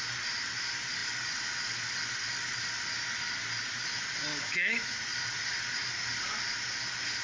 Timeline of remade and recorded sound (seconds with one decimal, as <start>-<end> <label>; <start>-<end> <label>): 0.0-4.3 recorded; 4.3-5.0 remade; 5.0-7.2 recorded